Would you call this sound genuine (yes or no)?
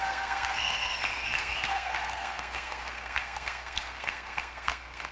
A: no